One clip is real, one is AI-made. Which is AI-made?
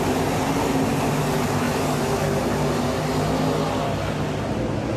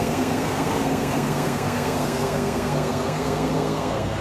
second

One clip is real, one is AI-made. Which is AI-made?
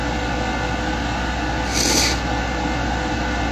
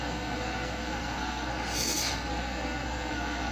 second